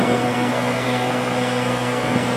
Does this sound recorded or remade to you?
remade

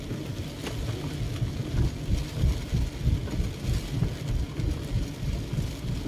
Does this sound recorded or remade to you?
recorded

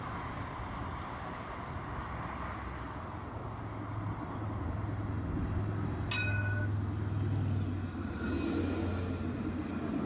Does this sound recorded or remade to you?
recorded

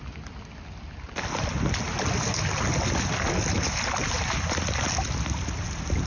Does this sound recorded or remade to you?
recorded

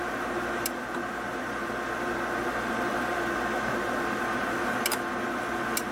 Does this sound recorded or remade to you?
recorded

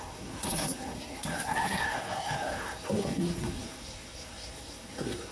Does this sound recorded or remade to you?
remade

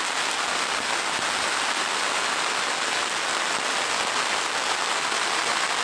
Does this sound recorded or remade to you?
recorded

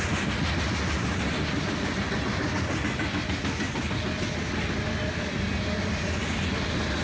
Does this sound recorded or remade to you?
recorded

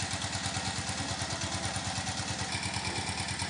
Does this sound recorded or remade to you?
recorded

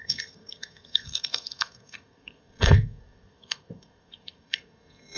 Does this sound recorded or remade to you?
remade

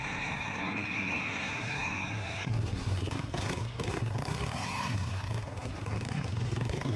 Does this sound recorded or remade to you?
remade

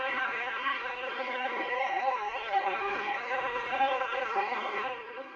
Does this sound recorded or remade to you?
remade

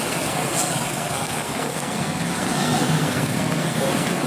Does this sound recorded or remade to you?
remade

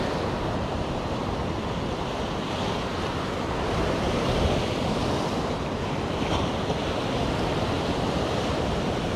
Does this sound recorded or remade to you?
recorded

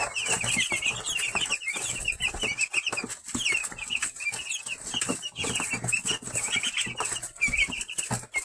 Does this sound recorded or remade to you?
recorded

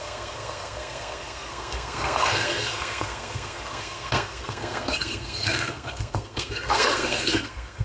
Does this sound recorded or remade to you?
remade